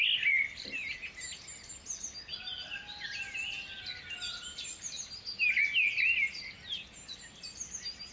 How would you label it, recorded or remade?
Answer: recorded